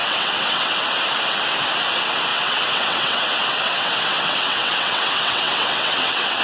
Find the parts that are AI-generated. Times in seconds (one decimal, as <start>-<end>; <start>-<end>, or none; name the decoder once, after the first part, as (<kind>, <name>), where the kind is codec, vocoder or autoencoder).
0.0-0.8 (vocoder, WaveNeXt); 2.3-6.4